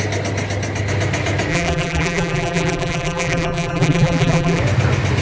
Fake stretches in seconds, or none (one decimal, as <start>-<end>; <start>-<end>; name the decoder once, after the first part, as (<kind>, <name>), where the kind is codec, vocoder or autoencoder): 1.5-4.6 (vocoder, BigVGAN v2)